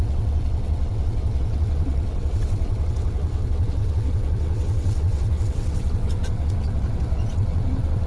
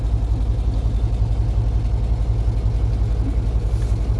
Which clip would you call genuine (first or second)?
second